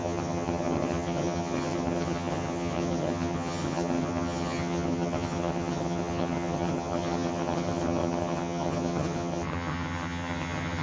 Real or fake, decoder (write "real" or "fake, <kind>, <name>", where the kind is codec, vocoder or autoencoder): fake, vocoder, HiFi-GAN